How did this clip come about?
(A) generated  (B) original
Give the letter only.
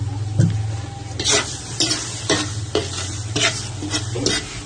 B